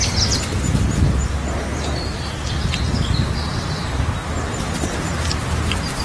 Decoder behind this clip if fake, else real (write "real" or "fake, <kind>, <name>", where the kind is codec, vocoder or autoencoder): real